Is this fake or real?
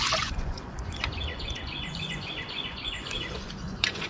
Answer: fake